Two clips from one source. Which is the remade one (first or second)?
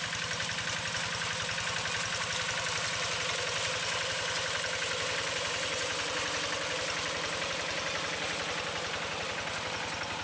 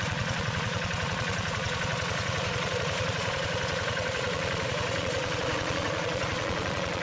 second